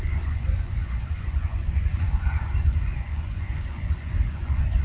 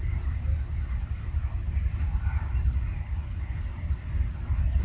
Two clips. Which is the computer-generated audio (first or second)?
first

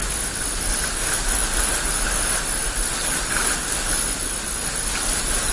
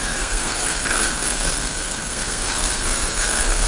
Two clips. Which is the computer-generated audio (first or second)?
second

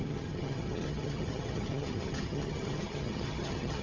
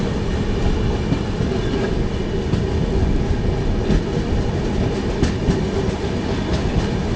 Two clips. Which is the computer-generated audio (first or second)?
first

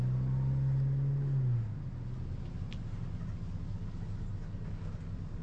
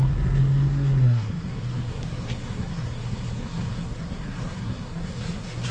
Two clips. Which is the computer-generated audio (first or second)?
second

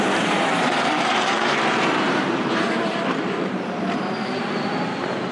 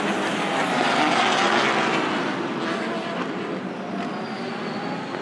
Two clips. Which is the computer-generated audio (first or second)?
first